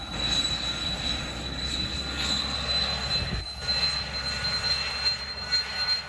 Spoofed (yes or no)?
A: no